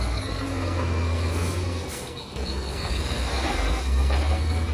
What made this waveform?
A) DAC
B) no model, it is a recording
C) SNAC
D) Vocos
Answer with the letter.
C